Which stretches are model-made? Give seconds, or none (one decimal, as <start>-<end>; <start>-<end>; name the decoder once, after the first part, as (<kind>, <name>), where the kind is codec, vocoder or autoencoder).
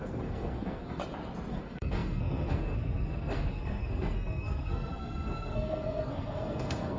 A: 0.0-1.0 (codec, SNAC); 1.5-7.0